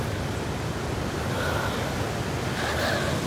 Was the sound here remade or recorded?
recorded